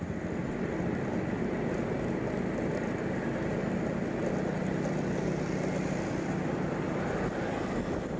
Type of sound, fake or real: real